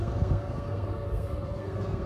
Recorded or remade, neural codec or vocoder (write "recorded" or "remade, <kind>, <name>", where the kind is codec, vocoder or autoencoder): remade, codec, SNAC